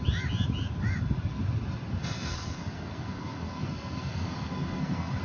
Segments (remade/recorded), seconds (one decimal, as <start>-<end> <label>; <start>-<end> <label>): 0.0-2.0 recorded; 2.0-5.2 remade